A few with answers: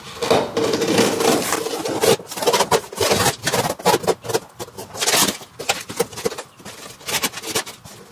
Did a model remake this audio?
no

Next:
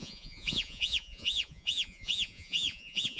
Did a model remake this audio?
yes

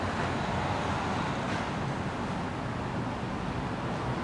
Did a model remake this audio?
no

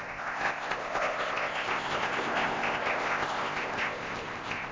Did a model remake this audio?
yes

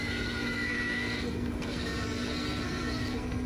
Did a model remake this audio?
yes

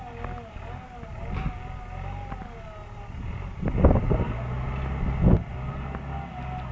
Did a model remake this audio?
no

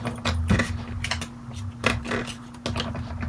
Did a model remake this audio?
no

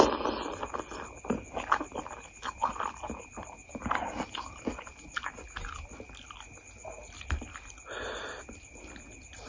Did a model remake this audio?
no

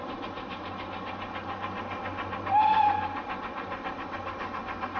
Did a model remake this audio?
no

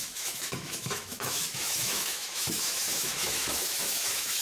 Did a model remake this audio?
yes